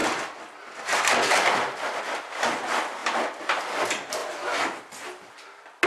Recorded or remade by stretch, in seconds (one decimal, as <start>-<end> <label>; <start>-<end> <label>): 0.0-5.9 recorded